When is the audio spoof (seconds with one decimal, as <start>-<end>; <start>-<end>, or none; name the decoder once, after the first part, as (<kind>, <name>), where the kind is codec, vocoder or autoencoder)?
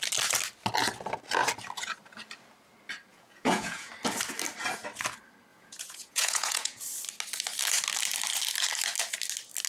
3.1-3.9 (vocoder, Vocos); 5.5-6.8